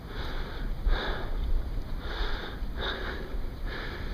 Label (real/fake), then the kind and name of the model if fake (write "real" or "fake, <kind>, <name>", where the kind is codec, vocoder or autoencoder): fake, vocoder, BigVGAN v2